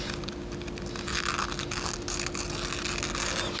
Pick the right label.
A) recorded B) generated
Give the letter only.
A